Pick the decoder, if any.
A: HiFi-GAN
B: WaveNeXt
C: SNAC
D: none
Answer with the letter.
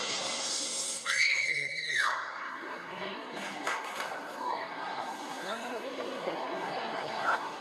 C